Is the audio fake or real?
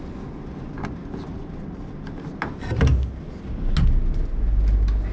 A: real